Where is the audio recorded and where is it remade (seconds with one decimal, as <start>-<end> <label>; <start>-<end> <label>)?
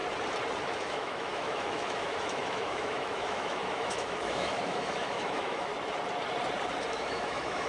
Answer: 0.0-0.6 recorded; 0.6-5.7 remade; 5.7-6.9 recorded; 6.9-7.7 remade